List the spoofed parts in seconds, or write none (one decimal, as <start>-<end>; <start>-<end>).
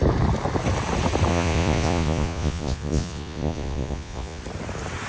1.3-4.4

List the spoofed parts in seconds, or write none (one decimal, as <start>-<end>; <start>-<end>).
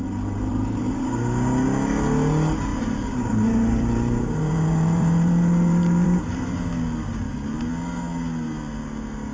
0.5-1.0; 2.7-6.6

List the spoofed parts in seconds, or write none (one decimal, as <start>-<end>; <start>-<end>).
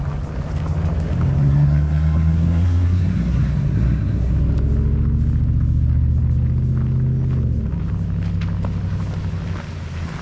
1.4-4.3